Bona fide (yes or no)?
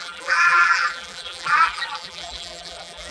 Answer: no